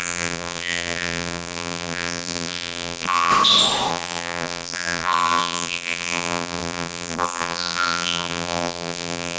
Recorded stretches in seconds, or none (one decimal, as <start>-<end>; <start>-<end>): 3.3-3.9